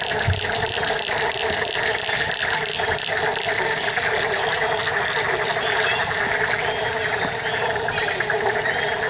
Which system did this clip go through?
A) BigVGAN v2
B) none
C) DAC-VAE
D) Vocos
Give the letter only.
B